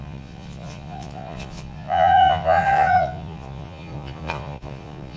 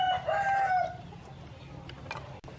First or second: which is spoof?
first